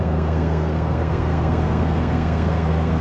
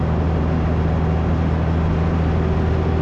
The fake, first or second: first